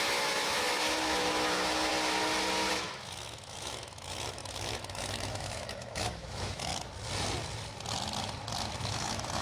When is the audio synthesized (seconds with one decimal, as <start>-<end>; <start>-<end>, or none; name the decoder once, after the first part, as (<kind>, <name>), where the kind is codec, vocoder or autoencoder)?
0.0-1.9 (autoencoder, DAC-VAE); 2.7-6.7; 8.8-9.4